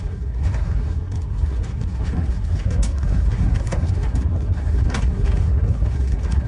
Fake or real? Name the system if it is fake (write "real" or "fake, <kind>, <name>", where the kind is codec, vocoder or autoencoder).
fake, codec, SNAC